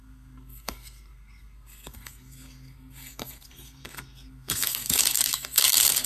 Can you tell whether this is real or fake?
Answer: fake